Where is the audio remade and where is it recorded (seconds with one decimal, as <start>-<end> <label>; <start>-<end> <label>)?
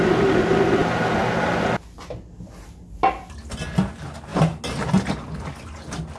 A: 0.0-6.2 recorded